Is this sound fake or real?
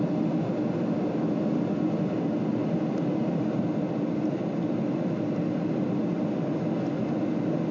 real